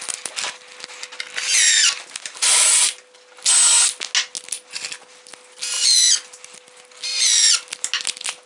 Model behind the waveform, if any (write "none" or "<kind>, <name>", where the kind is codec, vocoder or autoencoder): none